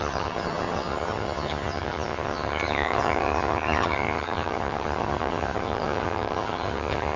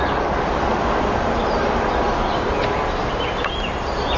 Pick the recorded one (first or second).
second